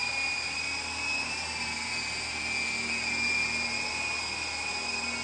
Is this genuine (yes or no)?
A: yes